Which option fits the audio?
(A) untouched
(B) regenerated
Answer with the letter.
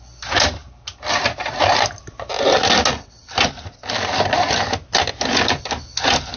A